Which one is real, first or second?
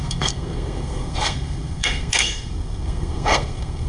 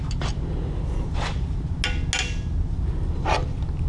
second